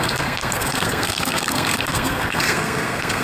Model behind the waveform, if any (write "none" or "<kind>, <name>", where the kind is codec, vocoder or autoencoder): codec, SNAC